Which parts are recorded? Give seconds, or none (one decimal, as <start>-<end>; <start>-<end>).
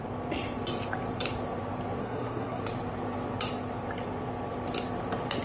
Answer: 0.0-2.0; 2.6-5.4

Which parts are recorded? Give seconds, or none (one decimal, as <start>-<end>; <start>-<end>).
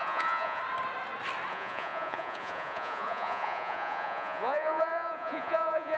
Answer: 0.6-1.5